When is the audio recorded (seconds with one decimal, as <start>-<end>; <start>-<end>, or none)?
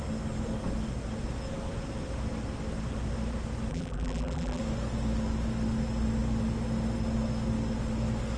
0.0-3.7; 4.6-8.4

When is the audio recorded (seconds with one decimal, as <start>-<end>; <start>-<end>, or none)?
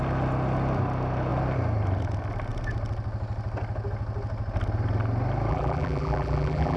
0.0-5.5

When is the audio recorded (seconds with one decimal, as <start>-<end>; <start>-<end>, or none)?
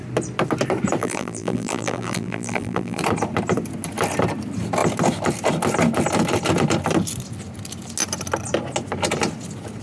0.0-1.0; 3.0-9.8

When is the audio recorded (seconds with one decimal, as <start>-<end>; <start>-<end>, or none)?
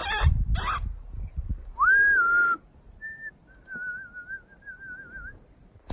0.0-5.9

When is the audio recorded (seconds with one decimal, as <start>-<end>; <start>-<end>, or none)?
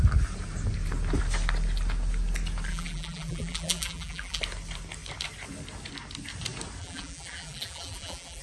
0.0-2.7; 4.4-6.8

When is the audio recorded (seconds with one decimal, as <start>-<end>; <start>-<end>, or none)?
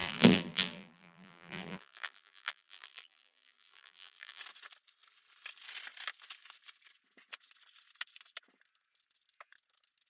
4.4-10.1